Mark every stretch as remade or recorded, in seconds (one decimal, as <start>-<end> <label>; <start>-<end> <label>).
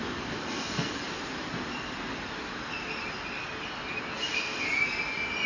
0.0-0.4 recorded; 0.4-1.0 remade; 1.0-5.5 recorded